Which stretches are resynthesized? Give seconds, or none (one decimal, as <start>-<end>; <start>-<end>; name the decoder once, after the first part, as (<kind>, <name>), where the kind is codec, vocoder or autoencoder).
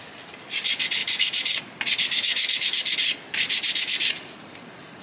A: none